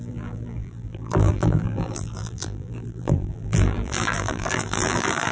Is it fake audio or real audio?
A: fake